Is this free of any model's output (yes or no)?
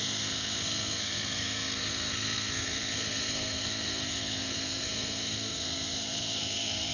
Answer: no